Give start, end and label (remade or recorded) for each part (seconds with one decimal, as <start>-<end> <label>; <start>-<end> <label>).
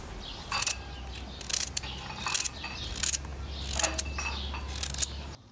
0.0-5.5 recorded